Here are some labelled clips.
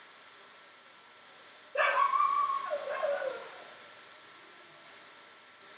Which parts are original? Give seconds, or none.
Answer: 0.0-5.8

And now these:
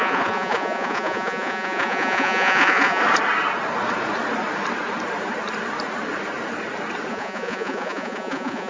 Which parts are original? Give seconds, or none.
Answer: 3.0-7.1